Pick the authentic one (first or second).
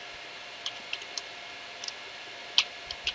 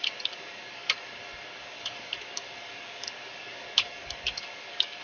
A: first